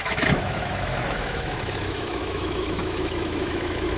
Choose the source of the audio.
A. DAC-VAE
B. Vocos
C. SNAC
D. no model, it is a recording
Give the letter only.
A